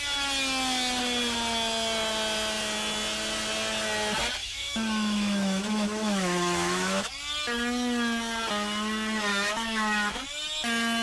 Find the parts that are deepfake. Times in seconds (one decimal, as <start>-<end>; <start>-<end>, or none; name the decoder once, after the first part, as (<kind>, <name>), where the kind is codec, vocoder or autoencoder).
4.4-7.1 (autoencoder, DAC-VAE); 9.3-10.2